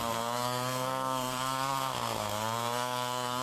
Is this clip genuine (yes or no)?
no